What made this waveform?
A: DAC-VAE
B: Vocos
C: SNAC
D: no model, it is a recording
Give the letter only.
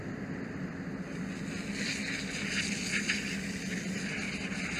D